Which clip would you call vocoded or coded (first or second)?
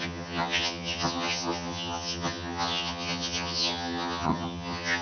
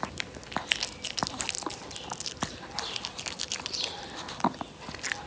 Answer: first